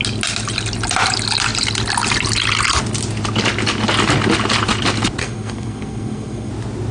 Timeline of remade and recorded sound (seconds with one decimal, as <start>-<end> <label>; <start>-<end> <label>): 0.0-5.2 recorded; 5.2-6.5 remade; 6.5-6.9 recorded